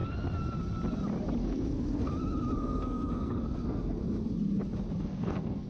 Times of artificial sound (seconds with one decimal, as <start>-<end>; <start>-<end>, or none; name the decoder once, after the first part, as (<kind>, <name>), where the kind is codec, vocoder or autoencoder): 1.4-2.1 (codec, SNAC); 2.6-4.0; 5.0-5.7